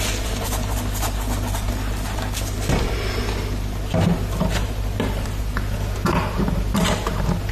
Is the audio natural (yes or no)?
yes